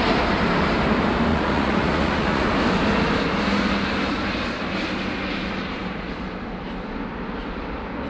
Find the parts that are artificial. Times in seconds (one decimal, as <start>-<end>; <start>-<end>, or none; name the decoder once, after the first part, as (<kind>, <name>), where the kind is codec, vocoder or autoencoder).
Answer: 1.3-2.5 (vocoder, Vocos)